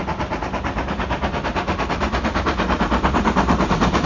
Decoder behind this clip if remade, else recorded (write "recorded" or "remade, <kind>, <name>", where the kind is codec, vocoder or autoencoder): recorded